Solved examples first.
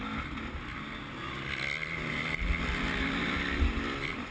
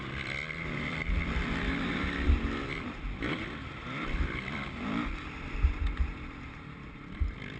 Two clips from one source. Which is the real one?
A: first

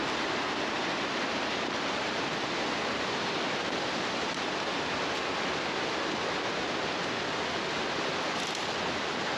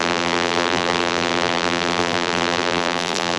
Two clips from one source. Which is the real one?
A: first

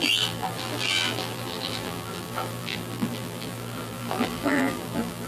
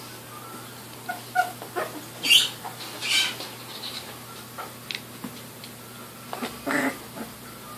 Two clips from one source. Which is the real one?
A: second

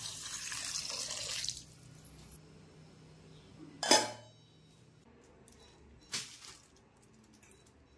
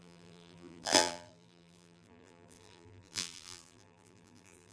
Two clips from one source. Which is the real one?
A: first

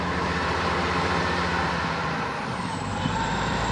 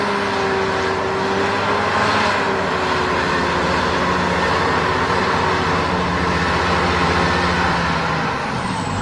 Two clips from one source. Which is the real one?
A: second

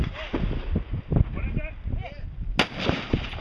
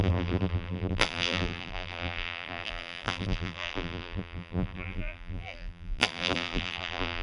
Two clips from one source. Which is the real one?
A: first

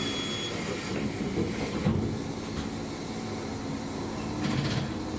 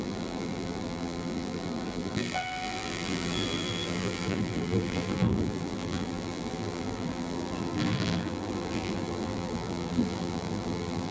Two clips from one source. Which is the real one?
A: first